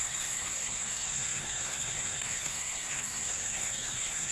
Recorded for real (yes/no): no